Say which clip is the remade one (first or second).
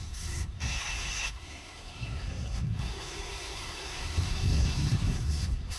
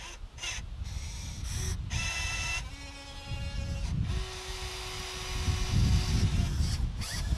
first